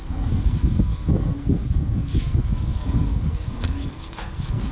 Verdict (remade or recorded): remade